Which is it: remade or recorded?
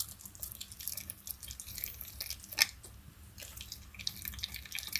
recorded